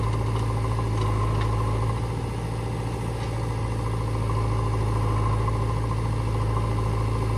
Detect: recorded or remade recorded